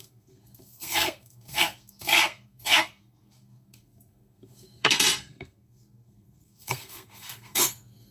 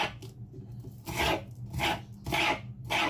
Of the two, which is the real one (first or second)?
second